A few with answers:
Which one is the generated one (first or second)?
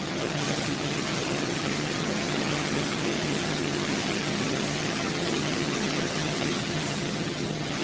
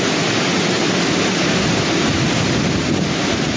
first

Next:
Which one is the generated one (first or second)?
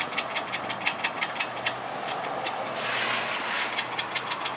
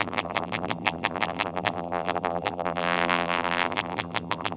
second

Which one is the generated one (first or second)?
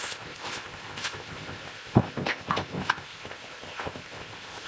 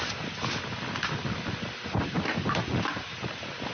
first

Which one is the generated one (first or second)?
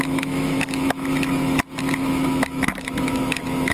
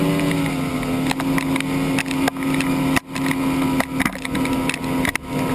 first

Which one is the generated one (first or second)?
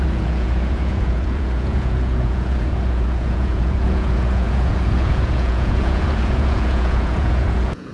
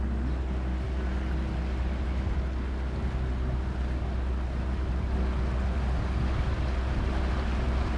first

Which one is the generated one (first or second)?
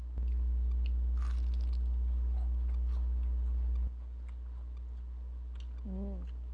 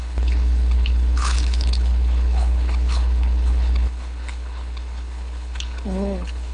second